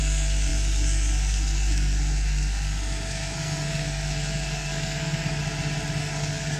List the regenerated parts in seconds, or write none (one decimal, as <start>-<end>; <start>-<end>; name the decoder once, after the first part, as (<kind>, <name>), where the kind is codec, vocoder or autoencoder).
0.0-5.4 (codec, SNAC); 6.0-6.6